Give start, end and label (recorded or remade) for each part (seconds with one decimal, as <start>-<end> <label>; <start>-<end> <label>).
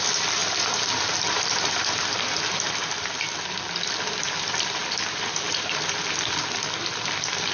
0.0-4.8 recorded; 4.8-6.0 remade; 6.0-7.5 recorded